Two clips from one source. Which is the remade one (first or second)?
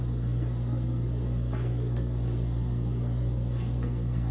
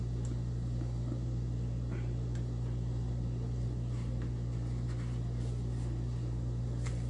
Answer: first